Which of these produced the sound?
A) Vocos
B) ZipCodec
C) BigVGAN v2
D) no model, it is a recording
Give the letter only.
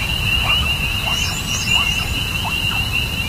D